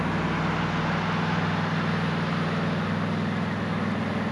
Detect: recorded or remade recorded